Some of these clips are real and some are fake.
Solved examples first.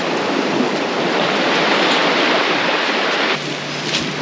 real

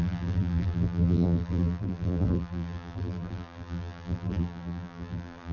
fake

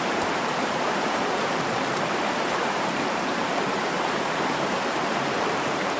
fake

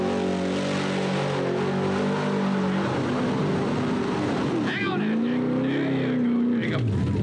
real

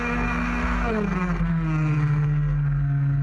fake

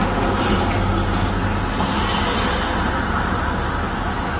real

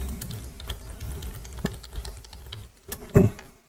real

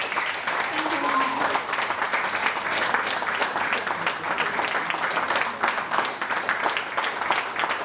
real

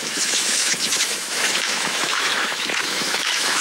fake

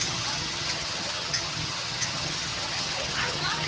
fake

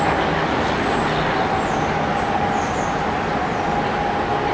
real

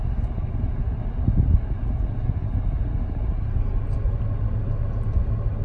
real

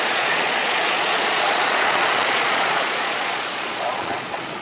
fake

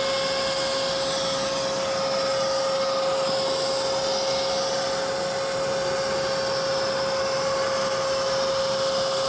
real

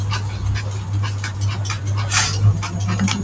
real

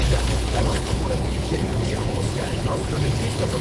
fake